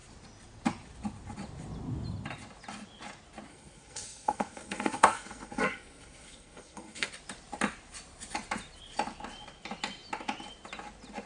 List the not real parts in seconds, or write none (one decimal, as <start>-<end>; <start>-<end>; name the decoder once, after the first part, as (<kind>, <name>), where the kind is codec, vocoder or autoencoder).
3.5-7.1 (codec, SNAC)